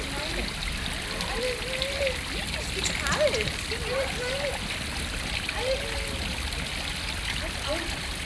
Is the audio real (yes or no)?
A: yes